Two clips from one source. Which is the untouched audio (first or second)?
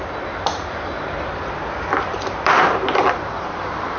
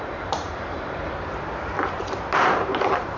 first